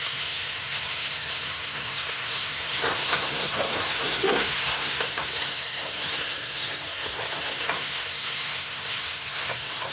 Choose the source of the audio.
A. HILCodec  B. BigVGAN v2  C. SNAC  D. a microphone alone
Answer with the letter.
C